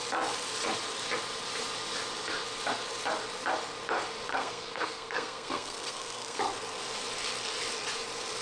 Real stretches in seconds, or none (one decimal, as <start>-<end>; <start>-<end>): 0.0-4.3; 6.4-8.4

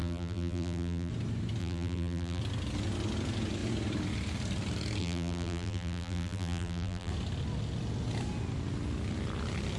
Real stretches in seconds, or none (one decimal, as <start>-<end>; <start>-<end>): 1.1-1.6; 2.4-5.0; 7.1-9.8

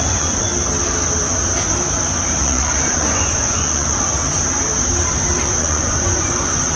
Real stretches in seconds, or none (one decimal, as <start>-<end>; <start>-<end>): 0.5-2.4; 4.1-5.4